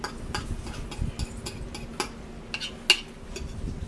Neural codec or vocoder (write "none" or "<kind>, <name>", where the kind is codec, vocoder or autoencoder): none